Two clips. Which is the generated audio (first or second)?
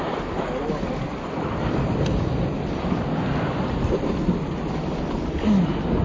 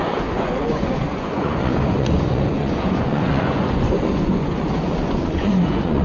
second